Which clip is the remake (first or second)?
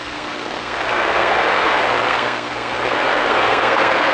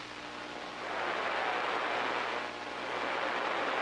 first